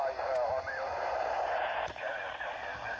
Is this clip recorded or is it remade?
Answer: remade